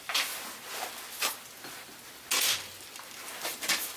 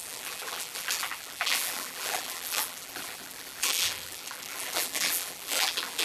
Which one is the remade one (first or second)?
second